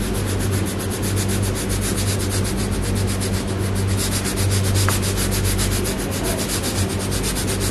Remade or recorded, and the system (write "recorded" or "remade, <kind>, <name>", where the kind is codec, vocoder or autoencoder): recorded